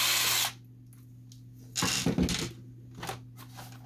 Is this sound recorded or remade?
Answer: recorded